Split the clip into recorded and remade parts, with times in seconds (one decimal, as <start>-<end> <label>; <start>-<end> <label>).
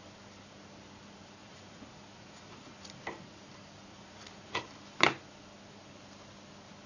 0.0-1.4 recorded; 1.4-2.8 remade; 2.8-3.9 recorded; 3.9-4.6 remade; 4.6-6.9 recorded